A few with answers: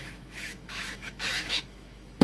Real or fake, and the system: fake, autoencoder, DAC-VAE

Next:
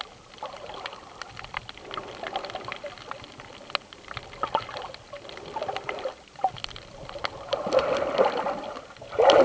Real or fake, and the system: real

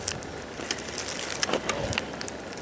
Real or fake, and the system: real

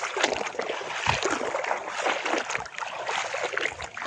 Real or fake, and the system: real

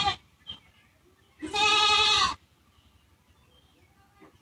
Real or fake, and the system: real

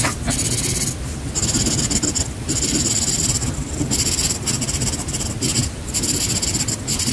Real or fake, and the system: real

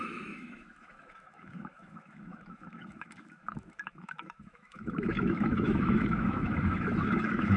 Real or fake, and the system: fake, autoencoder, DAC-VAE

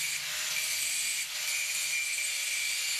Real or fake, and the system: real